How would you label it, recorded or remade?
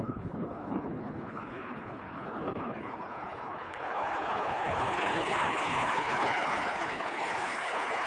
remade